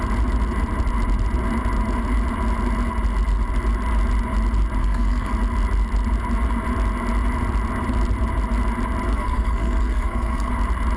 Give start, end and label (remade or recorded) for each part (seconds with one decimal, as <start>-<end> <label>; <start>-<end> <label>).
0.0-4.8 recorded; 4.8-5.3 remade; 5.3-9.1 recorded; 9.1-10.5 remade; 10.5-11.0 recorded